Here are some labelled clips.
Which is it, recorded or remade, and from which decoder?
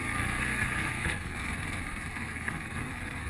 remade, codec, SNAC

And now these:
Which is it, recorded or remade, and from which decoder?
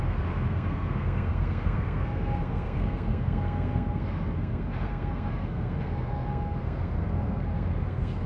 remade, codec, SNAC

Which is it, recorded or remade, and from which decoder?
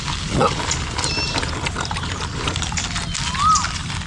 recorded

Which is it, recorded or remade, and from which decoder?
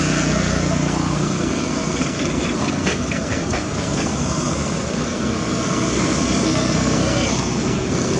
remade, codec, SNAC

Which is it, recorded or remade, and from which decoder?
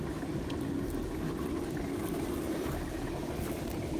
recorded